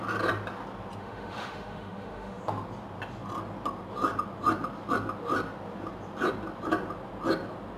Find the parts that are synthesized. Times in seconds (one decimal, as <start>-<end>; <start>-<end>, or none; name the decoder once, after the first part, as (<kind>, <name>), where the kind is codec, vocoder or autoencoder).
1.0-2.4 (autoencoder, DAC-VAE)